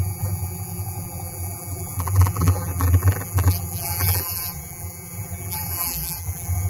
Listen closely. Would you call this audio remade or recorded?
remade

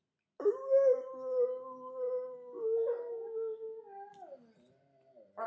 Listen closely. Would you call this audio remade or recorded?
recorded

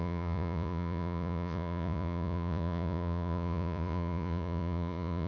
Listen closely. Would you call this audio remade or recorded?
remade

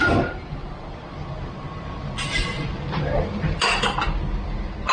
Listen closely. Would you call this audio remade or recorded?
recorded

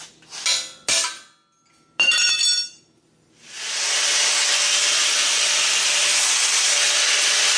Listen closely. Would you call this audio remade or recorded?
recorded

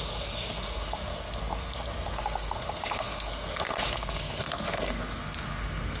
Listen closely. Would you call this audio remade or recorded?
remade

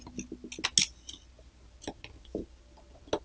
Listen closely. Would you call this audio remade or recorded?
recorded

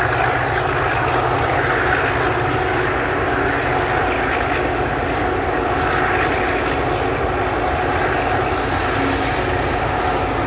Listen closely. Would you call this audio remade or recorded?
recorded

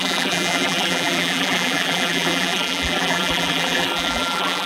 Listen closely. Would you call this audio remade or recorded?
remade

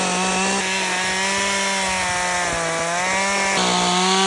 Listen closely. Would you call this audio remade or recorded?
recorded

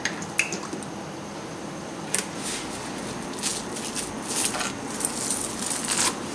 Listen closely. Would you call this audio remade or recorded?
recorded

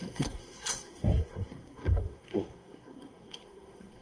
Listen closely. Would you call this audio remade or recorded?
remade